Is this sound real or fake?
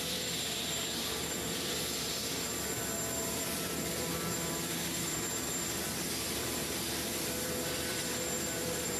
fake